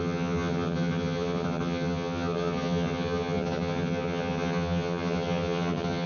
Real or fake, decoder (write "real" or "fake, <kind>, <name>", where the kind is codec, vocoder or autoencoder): fake, vocoder, HiFi-GAN